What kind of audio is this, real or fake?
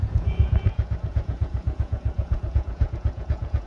fake